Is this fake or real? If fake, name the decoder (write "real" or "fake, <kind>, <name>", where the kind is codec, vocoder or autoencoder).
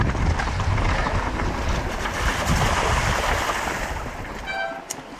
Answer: real